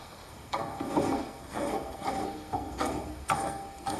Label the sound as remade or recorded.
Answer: remade